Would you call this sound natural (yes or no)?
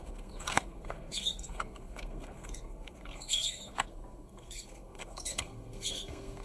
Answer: no